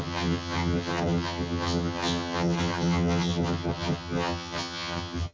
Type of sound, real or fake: fake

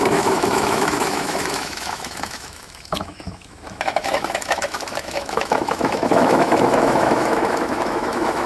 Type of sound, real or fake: fake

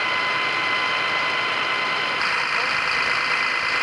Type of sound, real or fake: fake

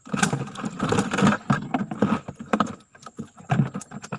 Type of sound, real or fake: fake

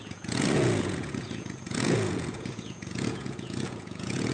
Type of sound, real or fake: fake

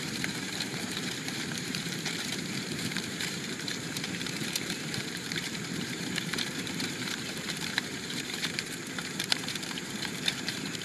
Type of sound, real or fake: fake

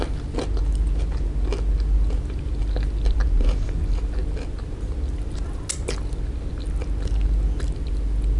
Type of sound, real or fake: real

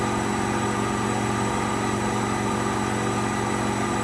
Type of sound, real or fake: real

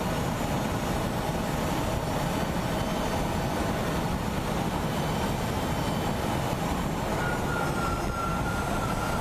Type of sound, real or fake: real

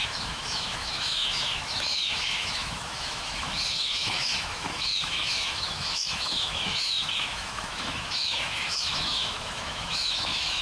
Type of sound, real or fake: fake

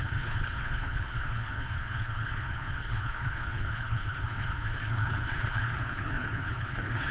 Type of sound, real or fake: fake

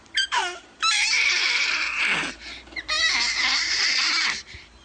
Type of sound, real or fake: fake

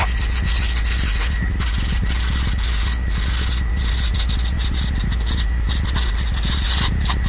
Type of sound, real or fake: real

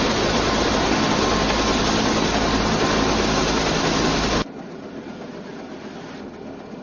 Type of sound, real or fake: real